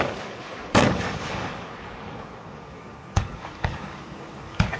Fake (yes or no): yes